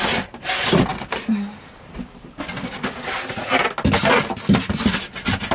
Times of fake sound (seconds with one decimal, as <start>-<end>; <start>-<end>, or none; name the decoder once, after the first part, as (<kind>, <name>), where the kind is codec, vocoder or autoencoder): none